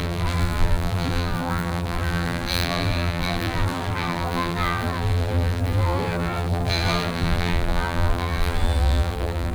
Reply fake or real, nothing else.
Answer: fake